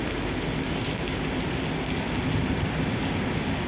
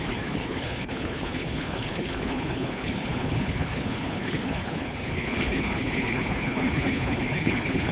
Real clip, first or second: first